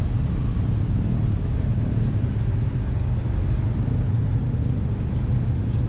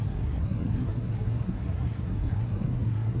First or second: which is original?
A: first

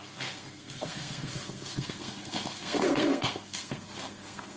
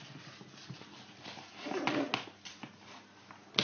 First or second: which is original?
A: second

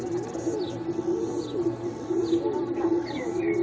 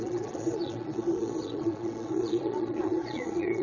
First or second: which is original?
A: first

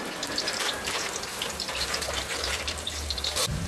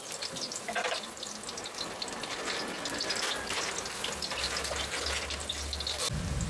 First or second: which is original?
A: second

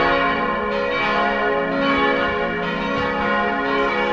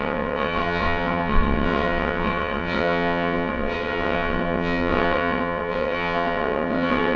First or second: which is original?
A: first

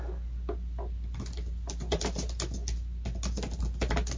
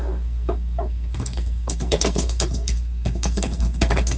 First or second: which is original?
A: first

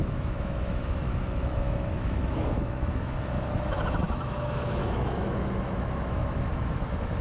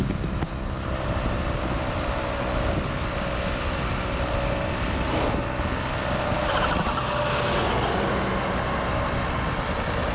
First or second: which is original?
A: second